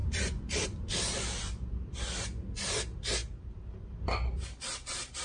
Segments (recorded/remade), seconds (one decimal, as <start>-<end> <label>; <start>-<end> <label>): 0.0-2.7 remade; 2.7-3.2 recorded; 3.2-3.9 remade; 3.9-5.2 recorded